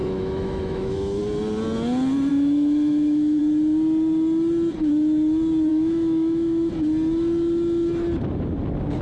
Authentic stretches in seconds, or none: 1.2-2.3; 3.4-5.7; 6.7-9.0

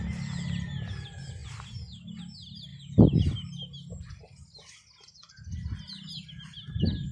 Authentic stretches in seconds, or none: 0.0-7.1

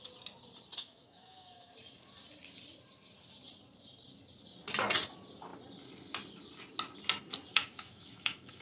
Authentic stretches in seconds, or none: 0.0-0.8; 1.7-7.5